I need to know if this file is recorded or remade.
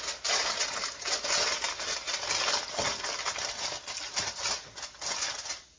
recorded